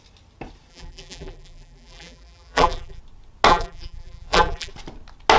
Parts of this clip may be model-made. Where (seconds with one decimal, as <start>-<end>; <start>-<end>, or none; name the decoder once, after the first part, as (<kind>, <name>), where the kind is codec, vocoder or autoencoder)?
0.7-3.0 (vocoder, BigVGAN v2); 3.5-4.7